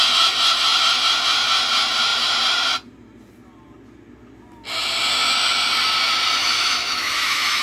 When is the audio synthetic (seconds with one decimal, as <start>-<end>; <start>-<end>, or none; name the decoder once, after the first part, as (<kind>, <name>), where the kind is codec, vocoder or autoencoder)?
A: 6.4-7.6 (autoencoder, DAC-VAE)